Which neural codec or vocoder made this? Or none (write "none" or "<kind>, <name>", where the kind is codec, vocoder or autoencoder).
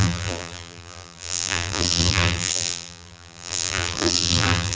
vocoder, BigVGAN v2